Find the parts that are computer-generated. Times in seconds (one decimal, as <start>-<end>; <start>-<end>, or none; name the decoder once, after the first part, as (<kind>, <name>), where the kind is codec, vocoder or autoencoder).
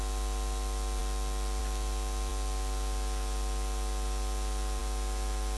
none